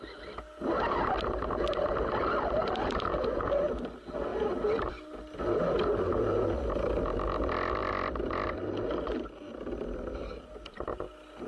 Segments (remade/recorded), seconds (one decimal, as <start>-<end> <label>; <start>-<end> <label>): 0.0-11.5 recorded